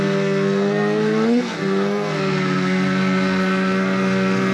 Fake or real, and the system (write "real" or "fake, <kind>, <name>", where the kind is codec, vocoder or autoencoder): fake, codec, SNAC